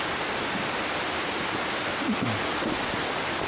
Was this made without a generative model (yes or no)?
yes